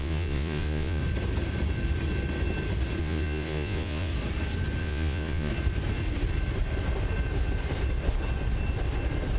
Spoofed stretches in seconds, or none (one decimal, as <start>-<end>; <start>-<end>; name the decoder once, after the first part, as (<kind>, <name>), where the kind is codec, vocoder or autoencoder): 0.0-1.0 (vocoder, Vocos); 3.0-4.1; 4.8-5.5